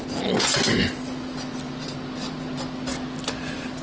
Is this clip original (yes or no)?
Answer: yes